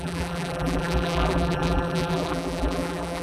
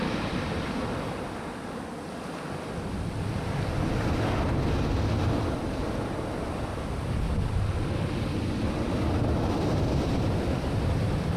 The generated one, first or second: first